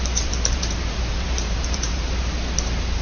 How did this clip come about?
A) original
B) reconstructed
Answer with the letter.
B